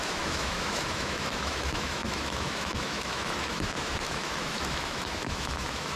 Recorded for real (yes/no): no